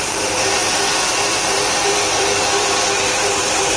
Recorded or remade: remade